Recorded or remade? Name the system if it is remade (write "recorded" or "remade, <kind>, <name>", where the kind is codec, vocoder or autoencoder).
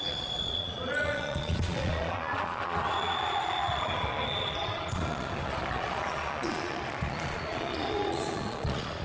remade, vocoder, Vocos